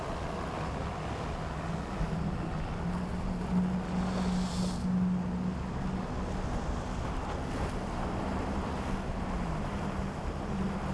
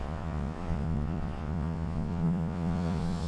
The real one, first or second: first